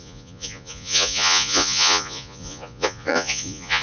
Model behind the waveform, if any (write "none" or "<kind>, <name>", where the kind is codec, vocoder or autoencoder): vocoder, Vocos